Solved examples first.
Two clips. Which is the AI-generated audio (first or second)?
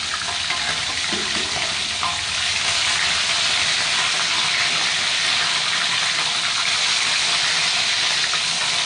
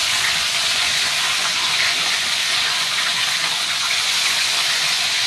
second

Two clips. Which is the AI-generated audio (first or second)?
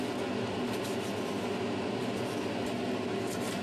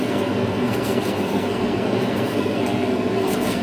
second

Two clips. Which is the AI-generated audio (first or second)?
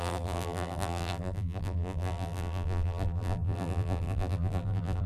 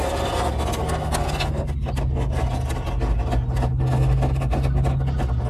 first